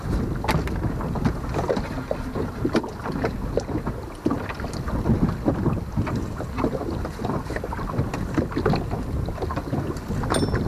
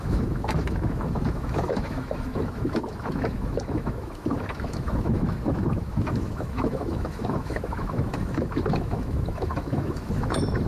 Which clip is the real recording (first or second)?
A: first